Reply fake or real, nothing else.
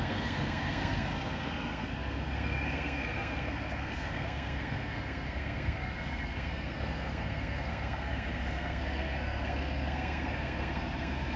fake